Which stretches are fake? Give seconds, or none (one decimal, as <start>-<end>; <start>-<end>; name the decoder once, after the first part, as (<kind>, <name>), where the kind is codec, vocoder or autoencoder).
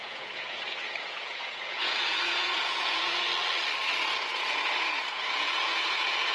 0.0-3.3 (vocoder, Vocos); 4.3-6.3